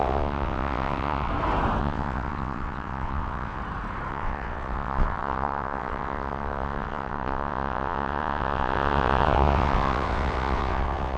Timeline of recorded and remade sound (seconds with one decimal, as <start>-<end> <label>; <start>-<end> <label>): 0.0-1.3 remade; 1.3-1.8 recorded; 1.8-3.6 remade; 3.6-4.1 recorded; 4.1-11.2 remade